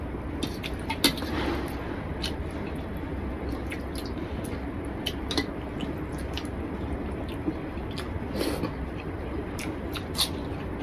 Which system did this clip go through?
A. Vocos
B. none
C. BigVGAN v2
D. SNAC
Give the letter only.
B